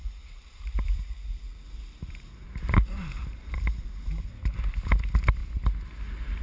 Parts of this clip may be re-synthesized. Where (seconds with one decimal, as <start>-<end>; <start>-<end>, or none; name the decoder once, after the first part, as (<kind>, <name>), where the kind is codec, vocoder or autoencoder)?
0.0-1.4 (vocoder, BigVGAN v2); 2.4-4.2